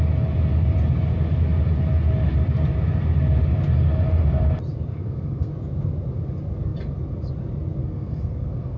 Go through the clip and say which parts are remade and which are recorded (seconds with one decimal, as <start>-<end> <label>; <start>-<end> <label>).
0.0-4.9 recorded; 4.9-5.5 remade; 5.5-7.8 recorded; 7.8-8.8 remade